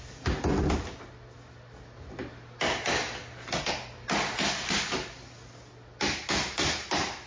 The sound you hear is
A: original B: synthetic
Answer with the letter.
A